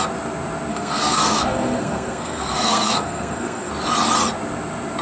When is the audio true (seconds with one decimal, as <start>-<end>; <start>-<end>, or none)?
0.0-0.7; 3.7-5.0